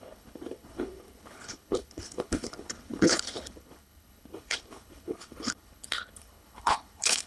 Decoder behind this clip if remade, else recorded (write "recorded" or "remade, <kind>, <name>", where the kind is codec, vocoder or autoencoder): remade, codec, HILCodec